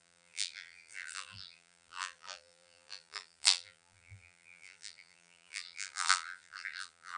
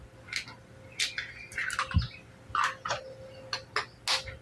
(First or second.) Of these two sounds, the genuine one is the second